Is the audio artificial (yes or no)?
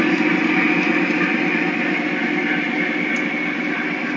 no